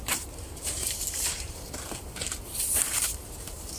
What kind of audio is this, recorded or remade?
remade